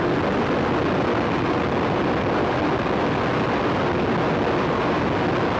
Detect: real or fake real